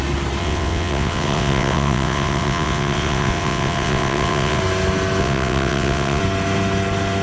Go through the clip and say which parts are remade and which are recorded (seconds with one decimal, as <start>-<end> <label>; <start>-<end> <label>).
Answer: 0.0-0.4 recorded; 0.4-4.6 remade; 4.6-5.2 recorded; 5.2-6.2 remade; 6.2-7.2 recorded